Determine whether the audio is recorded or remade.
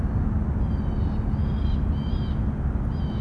recorded